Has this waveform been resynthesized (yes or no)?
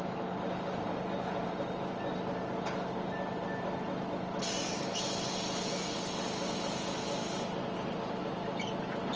no